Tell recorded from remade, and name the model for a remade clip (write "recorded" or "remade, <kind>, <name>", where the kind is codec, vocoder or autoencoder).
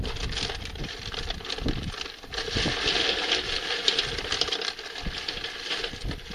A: recorded